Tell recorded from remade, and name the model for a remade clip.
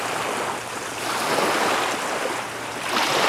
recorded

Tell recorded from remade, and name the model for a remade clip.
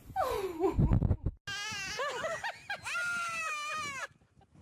recorded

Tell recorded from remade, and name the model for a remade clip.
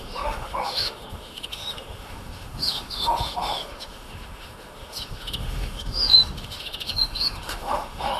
remade, autoencoder, DAC-VAE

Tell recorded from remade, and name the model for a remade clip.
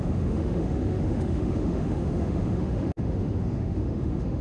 remade, autoencoder, DAC-VAE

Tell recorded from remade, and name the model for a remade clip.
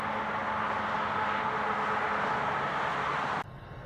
recorded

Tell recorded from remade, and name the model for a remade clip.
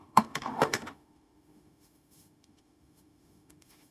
remade, autoencoder, DAC-VAE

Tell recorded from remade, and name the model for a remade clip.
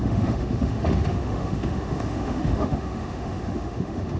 remade, autoencoder, DAC-VAE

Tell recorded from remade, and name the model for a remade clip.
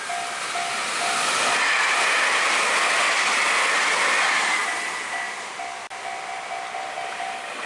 recorded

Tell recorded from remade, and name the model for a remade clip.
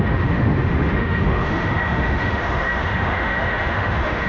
remade, autoencoder, DAC-VAE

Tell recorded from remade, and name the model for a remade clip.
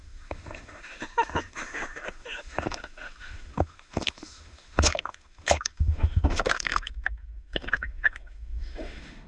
remade, autoencoder, DAC-VAE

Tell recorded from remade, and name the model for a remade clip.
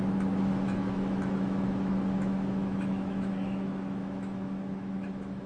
remade, autoencoder, DAC-VAE